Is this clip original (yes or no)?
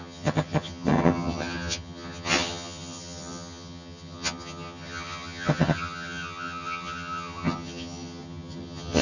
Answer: no